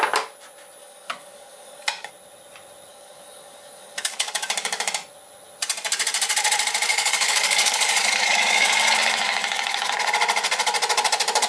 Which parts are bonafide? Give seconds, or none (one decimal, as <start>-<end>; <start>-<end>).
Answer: 0.0-0.8; 2.1-2.9; 4.9-6.9; 10.1-11.5